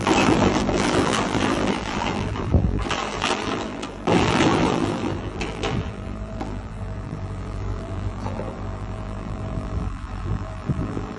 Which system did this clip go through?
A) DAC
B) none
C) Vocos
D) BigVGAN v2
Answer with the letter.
D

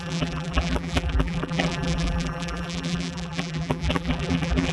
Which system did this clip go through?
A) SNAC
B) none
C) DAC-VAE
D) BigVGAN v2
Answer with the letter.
D